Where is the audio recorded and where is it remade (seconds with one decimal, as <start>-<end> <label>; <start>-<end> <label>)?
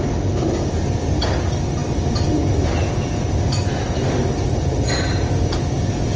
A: 0.0-6.2 recorded